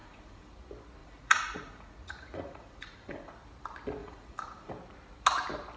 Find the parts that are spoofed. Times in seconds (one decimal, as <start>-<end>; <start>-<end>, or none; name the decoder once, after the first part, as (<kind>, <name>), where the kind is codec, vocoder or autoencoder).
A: 0.0-0.5 (vocoder, Vocos); 1.0-3.3; 4.0-4.7